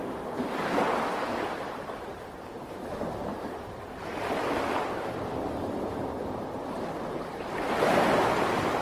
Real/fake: real